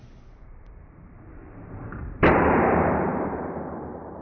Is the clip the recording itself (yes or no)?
no